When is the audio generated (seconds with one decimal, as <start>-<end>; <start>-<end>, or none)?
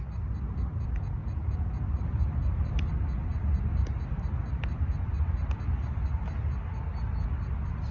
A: none